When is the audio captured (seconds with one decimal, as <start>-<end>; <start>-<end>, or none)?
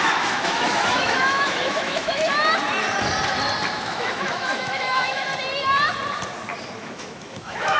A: 2.3-3.7; 5.3-6.8